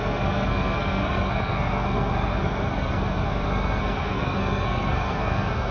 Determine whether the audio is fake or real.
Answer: fake